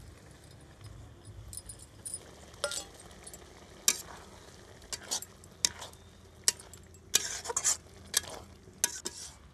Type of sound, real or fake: real